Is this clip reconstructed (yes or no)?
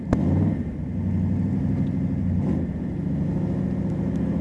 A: no